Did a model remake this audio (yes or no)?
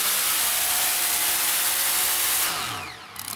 no